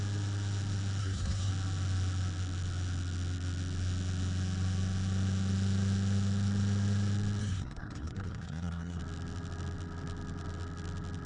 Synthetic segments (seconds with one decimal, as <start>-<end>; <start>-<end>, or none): 1.0-1.5; 7.4-9.0